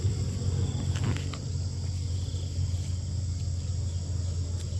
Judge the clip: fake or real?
real